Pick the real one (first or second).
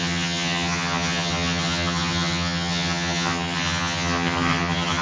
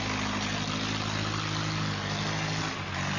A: second